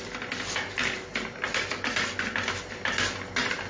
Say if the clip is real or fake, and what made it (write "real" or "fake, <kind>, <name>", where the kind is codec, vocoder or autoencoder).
real